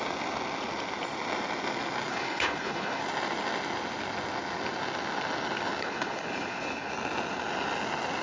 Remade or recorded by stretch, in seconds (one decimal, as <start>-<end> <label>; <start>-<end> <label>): 0.0-2.1 recorded; 2.1-3.0 remade; 3.0-5.8 recorded; 5.8-6.9 remade; 6.9-8.2 recorded